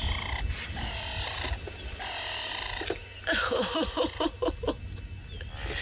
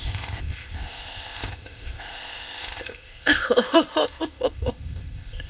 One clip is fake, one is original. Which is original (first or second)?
first